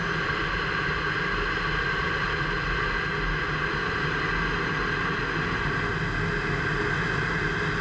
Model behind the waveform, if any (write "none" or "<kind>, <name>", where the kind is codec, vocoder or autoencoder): none